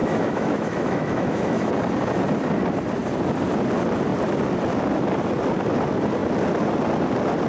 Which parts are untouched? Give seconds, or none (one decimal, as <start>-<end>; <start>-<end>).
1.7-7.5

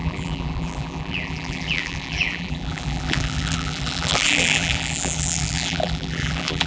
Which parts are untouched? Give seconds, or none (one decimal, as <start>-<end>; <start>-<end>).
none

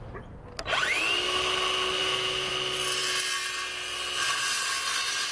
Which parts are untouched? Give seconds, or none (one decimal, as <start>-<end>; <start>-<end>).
0.0-2.0; 2.5-5.3

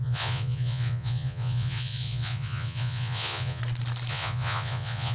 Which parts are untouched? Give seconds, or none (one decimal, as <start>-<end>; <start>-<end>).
3.6-4.1